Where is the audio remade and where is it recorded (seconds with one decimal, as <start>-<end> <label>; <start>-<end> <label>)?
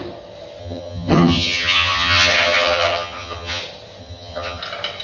0.0-0.6 recorded; 0.6-3.6 remade; 3.6-4.0 recorded; 4.0-4.6 remade; 4.6-5.0 recorded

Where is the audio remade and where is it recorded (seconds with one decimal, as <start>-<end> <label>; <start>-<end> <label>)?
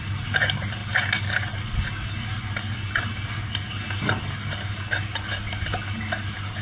0.0-6.6 recorded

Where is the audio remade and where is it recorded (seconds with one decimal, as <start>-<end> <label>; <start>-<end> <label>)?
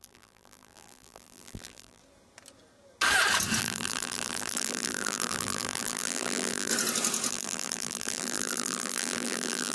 0.0-2.0 remade; 2.0-3.6 recorded; 3.6-6.7 remade; 6.7-7.3 recorded; 7.3-9.7 remade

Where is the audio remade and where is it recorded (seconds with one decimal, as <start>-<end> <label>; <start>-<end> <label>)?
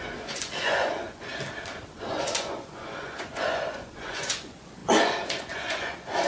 0.0-1.3 remade; 1.3-1.9 recorded; 1.9-6.3 remade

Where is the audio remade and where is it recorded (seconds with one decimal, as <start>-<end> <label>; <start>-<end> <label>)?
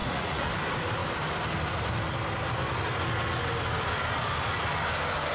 0.0-0.5 remade; 0.5-5.3 recorded